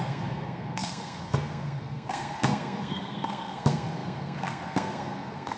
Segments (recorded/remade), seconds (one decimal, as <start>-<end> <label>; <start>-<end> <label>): 0.0-5.6 remade